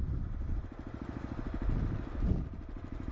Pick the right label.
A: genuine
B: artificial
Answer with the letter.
A